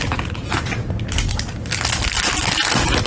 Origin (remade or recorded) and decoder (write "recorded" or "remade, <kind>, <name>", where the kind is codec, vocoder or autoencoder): recorded